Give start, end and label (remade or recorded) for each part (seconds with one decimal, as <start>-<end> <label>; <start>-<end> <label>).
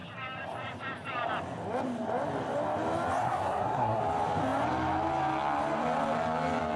0.0-3.2 recorded; 3.2-4.0 remade; 4.0-6.8 recorded